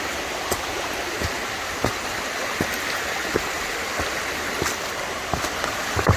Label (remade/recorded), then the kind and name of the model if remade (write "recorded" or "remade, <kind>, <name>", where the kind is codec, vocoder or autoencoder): recorded